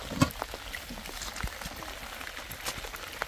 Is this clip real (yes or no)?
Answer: yes